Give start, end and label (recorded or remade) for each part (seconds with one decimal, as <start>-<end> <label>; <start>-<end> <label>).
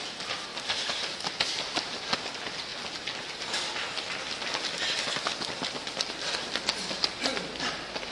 0.0-8.1 recorded